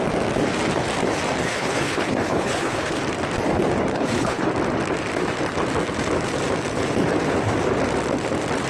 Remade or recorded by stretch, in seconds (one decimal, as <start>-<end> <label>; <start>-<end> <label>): 0.0-1.4 recorded; 1.4-3.0 remade; 3.0-3.9 recorded; 3.9-4.5 remade; 4.5-8.7 recorded